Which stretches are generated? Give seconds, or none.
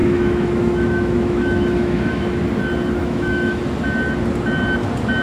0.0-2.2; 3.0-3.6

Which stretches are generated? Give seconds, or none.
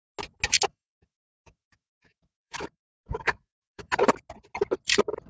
0.7-3.9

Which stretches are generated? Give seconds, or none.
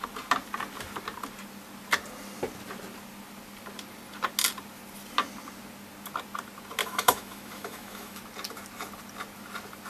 6.8-8.2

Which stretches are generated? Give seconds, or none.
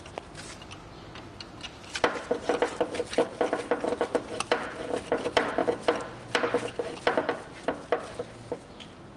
none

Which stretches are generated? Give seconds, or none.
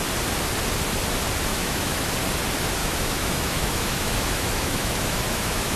1.5-2.1; 2.8-5.8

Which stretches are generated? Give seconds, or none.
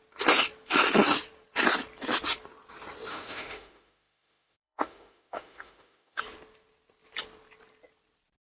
3.1-6.2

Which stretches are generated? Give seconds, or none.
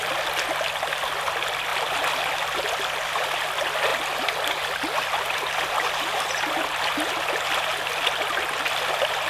none